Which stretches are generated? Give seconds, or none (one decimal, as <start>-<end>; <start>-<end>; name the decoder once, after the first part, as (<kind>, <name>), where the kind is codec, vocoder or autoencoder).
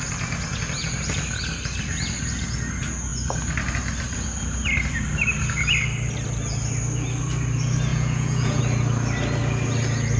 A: 7.9-8.6 (vocoder, Vocos)